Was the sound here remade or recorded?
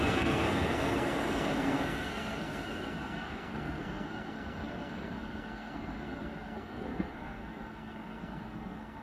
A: remade